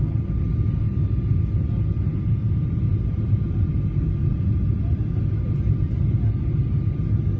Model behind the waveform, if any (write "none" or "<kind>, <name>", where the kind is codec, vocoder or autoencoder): none